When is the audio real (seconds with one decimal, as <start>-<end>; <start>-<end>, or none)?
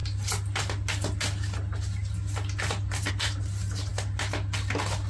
0.0-5.1